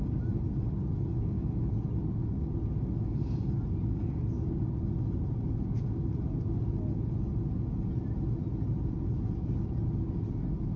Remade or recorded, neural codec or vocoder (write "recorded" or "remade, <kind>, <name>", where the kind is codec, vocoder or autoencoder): recorded